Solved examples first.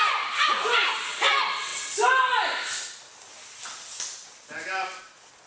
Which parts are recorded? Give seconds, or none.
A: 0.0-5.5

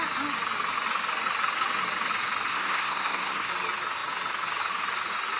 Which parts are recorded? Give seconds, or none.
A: 0.0-2.5; 3.5-5.4

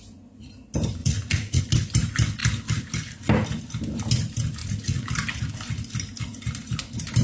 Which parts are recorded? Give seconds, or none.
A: 0.0-1.0; 1.6-4.6; 5.1-7.2